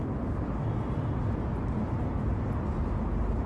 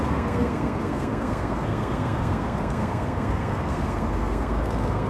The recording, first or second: first